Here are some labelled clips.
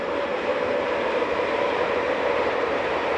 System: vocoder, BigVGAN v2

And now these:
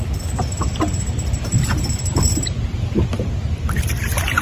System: vocoder, BigVGAN v2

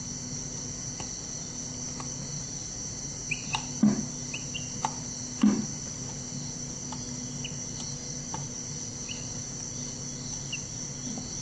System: none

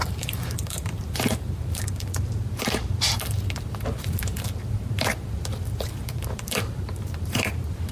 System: vocoder, BigVGAN v2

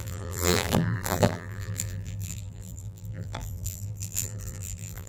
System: vocoder, BigVGAN v2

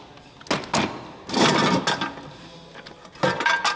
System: none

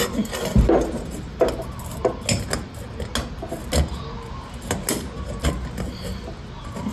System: none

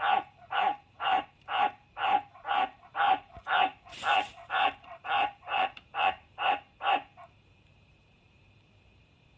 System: vocoder, BigVGAN v2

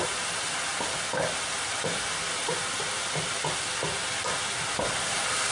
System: none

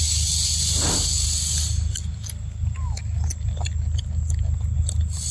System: none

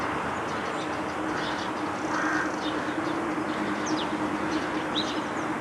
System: none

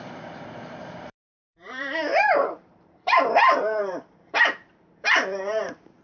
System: vocoder, BigVGAN v2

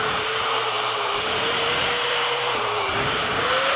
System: vocoder, BigVGAN v2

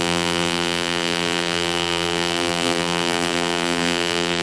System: vocoder, BigVGAN v2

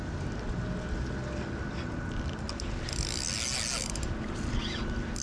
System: none